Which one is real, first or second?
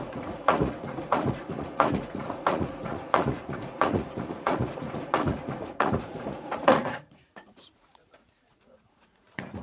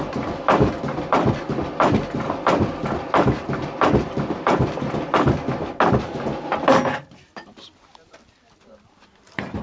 second